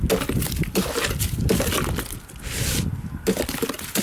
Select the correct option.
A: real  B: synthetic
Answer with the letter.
A